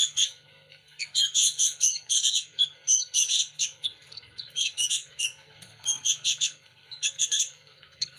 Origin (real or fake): fake